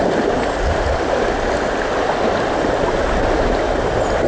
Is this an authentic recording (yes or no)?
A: yes